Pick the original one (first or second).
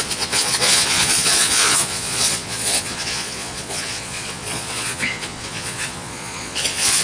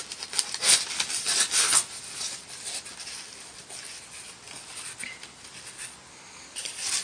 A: second